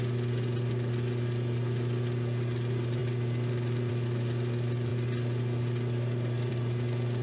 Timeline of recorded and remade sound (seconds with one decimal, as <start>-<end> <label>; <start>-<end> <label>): 0.0-7.2 recorded